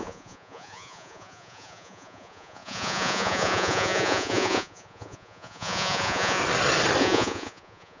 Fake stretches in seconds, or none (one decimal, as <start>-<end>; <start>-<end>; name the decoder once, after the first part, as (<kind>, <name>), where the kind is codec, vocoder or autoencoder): 0.0-6.4 (vocoder, Vocos); 7.0-8.0